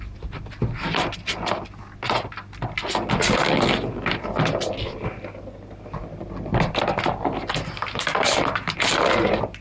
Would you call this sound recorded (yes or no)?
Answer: yes